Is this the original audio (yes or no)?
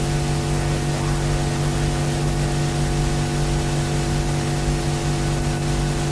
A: yes